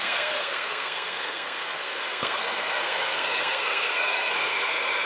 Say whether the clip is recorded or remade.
remade